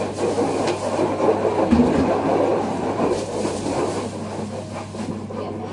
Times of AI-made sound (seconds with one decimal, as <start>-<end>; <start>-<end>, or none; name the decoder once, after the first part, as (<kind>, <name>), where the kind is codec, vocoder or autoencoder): 2.5-3.9 (vocoder, BigVGAN v2)